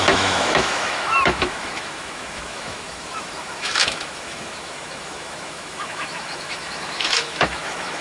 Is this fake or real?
fake